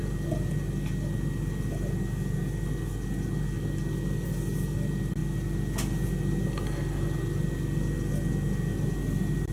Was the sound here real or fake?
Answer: real